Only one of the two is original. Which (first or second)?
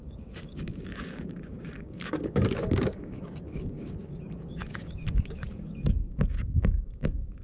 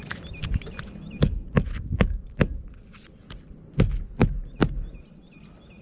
second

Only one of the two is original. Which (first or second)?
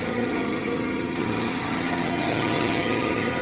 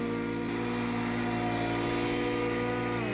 second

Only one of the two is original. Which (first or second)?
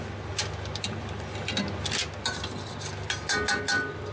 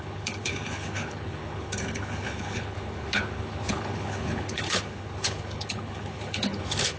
first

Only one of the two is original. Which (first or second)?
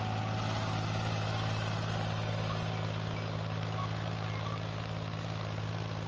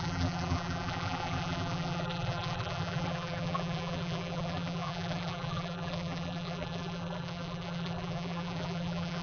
first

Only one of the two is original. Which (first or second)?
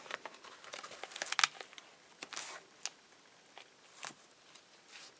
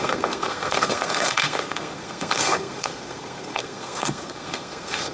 first